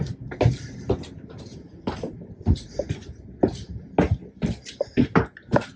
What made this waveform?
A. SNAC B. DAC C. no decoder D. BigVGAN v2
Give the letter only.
C